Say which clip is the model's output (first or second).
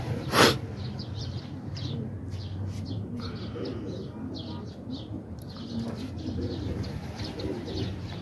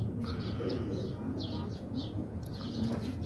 second